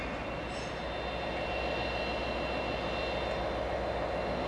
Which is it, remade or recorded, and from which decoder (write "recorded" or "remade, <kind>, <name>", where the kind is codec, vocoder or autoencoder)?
recorded